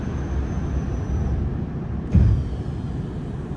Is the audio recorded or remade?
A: recorded